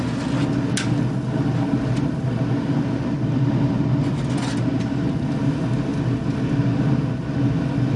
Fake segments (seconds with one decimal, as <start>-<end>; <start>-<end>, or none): none